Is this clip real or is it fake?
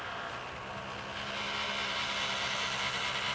real